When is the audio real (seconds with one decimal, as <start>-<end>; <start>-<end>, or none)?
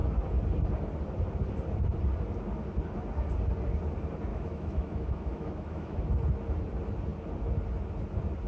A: 0.0-4.3; 6.0-8.5